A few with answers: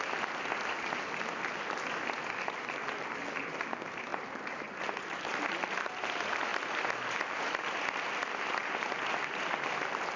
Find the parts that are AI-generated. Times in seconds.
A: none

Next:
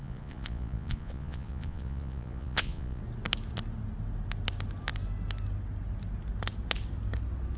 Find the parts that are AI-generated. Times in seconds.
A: 0.0-3.0 (vocoder, Vocos)

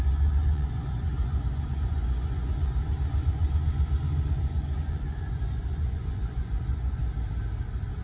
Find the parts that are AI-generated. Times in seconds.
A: 0.0-7.0 (vocoder, Vocos); 7.6-8.0

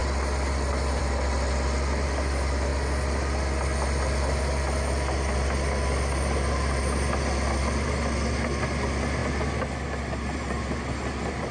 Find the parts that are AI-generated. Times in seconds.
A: none

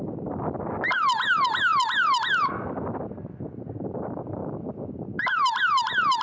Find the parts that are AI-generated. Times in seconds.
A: none

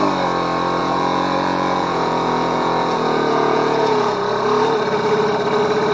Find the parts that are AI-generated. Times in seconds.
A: 0.8-4.3 (vocoder, Vocos)

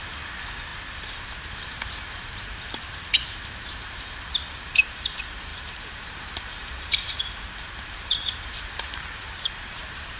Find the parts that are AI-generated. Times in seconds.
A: 0.0-10.2 (vocoder, BigVGAN v2)